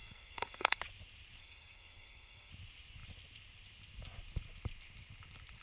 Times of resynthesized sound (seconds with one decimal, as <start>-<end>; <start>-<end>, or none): 0.0-0.8; 1.4-2.5